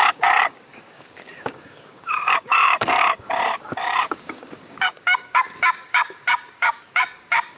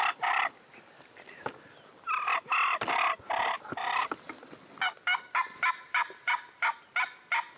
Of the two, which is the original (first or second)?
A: second